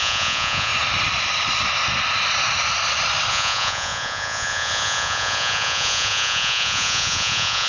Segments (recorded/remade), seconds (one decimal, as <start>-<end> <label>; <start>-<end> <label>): 0.0-0.7 remade; 0.7-3.3 recorded; 3.3-7.7 remade